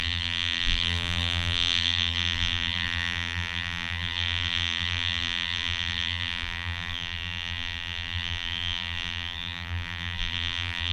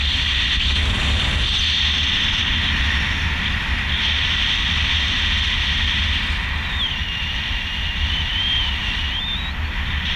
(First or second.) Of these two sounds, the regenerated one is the first